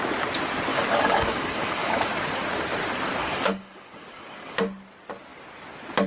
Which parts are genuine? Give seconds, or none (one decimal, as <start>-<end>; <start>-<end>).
0.0-0.7; 2.1-3.2; 4.6-6.1